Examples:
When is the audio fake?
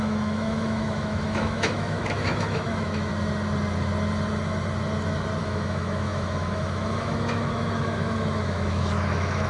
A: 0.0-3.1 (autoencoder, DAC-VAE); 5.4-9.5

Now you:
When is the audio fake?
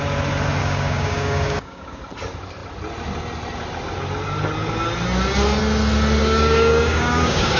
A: 0.6-2.0 (codec, DAC); 6.2-7.6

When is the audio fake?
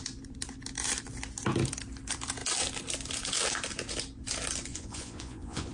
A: 4.7-5.7 (vocoder, Vocos)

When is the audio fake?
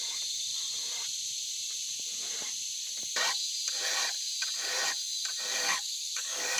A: 5.5-6.6 (codec, DAC)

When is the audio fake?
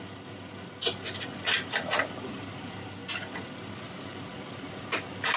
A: none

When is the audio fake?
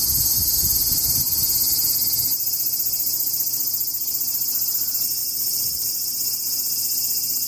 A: 5.2-5.9 (vocoder, BigVGAN v2)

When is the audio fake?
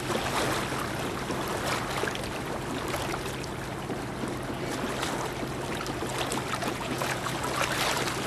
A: 6.6-7.3 (vocoder, Vocos)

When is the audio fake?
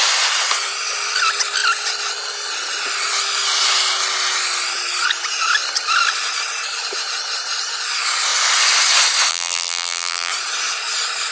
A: 9.3-10.3 (vocoder, BigVGAN v2)